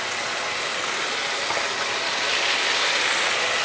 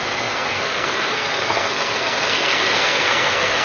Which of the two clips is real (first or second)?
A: first